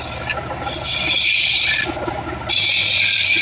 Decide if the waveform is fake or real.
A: real